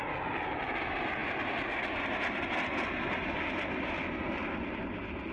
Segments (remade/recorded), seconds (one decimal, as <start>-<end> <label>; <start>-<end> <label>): 0.0-5.3 recorded